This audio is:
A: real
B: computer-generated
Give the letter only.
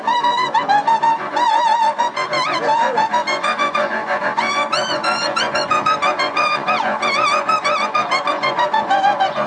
B